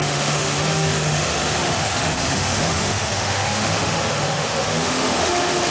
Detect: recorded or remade remade